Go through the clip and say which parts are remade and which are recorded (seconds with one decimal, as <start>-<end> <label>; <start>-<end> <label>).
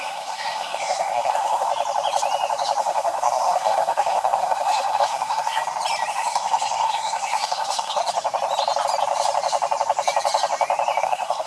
0.0-1.7 remade; 1.7-2.8 recorded; 2.8-5.6 remade; 5.6-6.1 recorded; 6.1-8.0 remade; 8.0-11.0 recorded; 11.0-11.5 remade